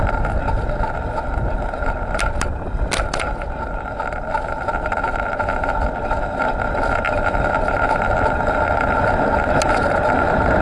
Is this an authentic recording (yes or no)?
yes